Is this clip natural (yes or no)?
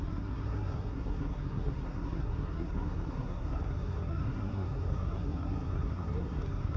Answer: no